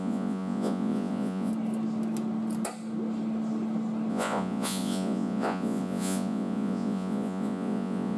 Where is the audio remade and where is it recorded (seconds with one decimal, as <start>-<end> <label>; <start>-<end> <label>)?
0.0-1.5 remade; 1.5-4.1 recorded; 4.1-8.2 remade